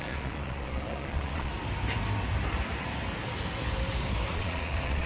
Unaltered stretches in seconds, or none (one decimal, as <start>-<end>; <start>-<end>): 1.5-4.3